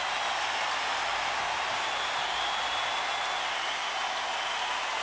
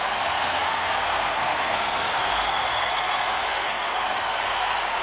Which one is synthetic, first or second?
second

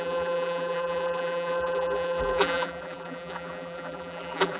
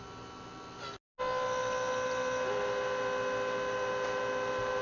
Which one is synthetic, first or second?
first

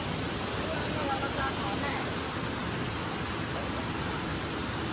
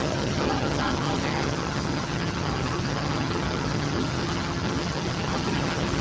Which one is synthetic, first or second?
second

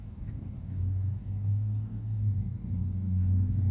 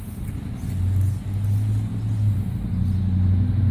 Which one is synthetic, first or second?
first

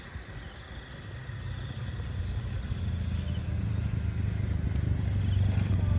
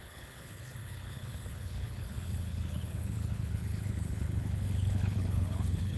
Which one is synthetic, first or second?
second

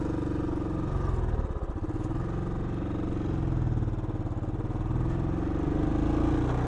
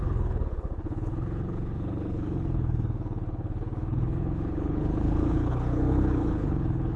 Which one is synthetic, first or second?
second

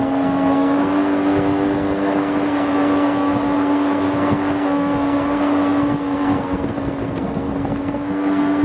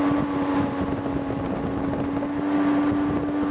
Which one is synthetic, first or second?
first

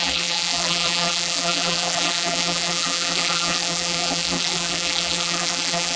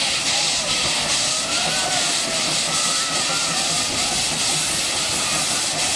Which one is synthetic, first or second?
first